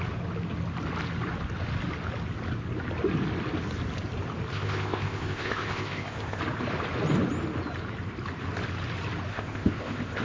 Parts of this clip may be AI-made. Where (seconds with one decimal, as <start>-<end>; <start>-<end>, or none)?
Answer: 4.5-6.4; 9.3-10.2